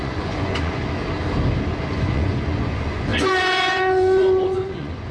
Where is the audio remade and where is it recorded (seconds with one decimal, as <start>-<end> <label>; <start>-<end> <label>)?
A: 0.0-0.8 remade; 0.8-1.9 recorded; 1.9-5.1 remade